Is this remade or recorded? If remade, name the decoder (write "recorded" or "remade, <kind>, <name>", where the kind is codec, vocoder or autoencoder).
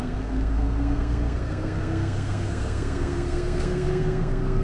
remade, codec, SNAC